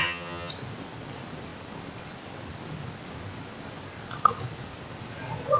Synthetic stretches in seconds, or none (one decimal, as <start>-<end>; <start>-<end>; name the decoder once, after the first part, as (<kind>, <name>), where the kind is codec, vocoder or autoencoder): 0.0-0.5 (vocoder, HiFi-GAN)